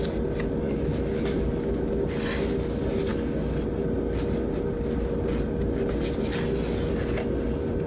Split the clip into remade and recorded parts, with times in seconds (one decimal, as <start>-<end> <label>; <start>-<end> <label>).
0.0-7.9 recorded